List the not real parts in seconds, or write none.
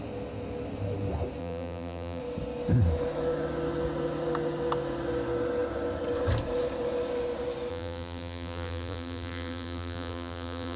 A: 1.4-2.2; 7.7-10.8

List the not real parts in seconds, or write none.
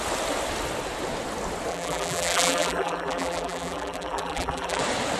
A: 1.7-4.8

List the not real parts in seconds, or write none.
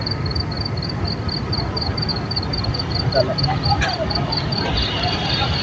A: 2.1-5.6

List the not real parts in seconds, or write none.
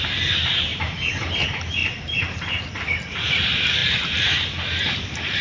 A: 0.7-1.3; 1.8-2.4